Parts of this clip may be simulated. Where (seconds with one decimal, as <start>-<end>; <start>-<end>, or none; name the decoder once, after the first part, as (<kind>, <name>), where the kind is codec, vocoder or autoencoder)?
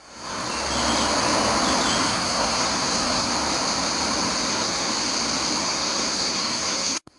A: 0.0-0.4 (codec, SNAC); 2.0-3.3; 4.5-4.9; 5.6-7.2